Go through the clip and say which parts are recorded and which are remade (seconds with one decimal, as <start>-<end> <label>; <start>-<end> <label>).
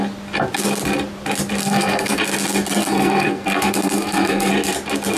0.0-1.6 recorded; 1.6-2.2 remade; 2.2-2.8 recorded; 2.8-4.5 remade; 4.5-5.2 recorded